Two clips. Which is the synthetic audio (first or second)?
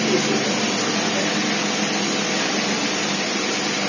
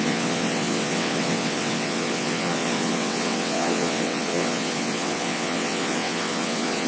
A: second